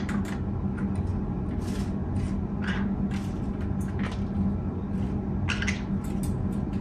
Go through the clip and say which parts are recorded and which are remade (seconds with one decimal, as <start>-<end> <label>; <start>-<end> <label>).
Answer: 0.0-6.8 recorded